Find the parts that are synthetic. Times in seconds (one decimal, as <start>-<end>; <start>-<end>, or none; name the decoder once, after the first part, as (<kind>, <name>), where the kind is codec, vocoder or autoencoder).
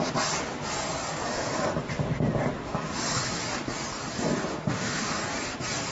4.5-5.2 (autoencoder, DAC-VAE)